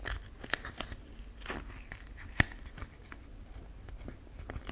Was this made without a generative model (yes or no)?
yes